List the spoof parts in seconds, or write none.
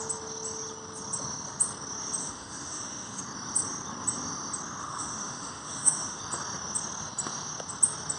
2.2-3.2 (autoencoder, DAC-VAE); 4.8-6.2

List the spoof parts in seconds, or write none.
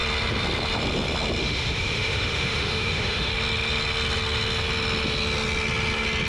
1.4-3.3 (autoencoder, DAC-VAE)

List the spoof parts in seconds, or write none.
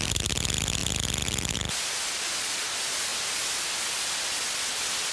none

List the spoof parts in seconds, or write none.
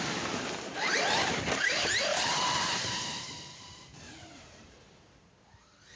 2.1-6.0 (vocoder, BigVGAN v2)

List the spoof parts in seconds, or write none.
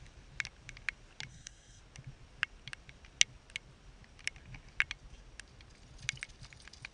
1.3-1.8 (codec, SNAC)